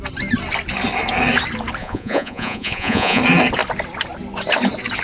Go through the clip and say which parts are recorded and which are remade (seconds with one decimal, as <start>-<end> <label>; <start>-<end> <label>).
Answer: 0.0-1.8 recorded; 1.8-3.2 remade; 3.2-5.0 recorded